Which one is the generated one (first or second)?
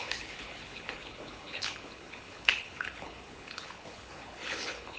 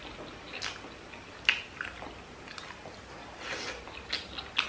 first